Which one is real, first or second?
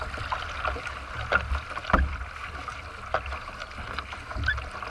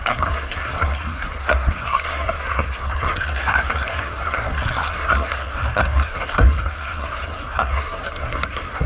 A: first